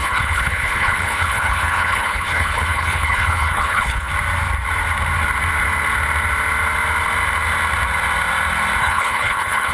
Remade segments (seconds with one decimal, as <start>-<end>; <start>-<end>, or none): 0.0-4.1; 8.8-9.7